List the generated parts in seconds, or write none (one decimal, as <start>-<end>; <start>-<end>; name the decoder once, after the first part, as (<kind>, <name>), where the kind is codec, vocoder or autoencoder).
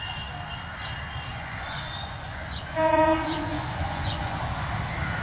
1.3-4.4 (vocoder, Vocos)